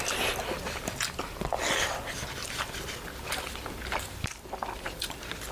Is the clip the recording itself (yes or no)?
yes